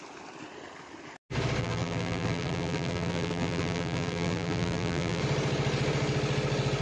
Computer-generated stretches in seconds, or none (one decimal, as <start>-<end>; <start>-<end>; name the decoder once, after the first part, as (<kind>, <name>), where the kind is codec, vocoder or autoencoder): 1.6-5.2 (vocoder, BigVGAN v2)